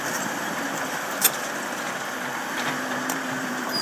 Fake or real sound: fake